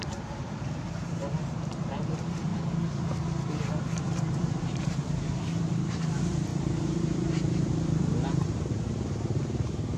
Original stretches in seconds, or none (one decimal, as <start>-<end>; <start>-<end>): 2.5-3.8